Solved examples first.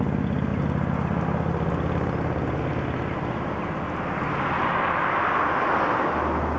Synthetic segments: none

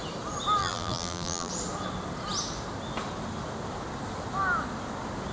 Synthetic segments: 0.6-1.5 (vocoder, BigVGAN v2)